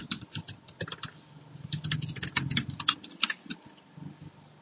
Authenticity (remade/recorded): recorded